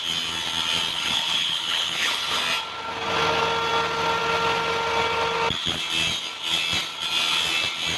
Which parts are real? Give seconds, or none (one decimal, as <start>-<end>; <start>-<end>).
0.0-0.9; 2.4-8.0